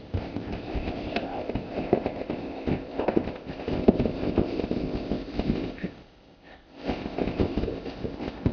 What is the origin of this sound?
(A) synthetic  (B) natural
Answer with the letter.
A